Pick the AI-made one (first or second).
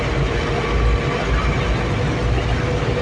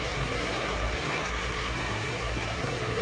second